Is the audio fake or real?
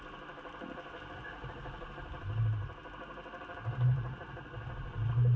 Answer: real